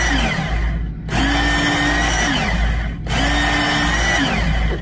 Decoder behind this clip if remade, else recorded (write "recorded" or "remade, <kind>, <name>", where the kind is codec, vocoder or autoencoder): recorded